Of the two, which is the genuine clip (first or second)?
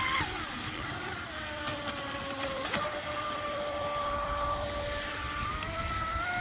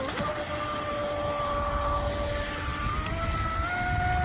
second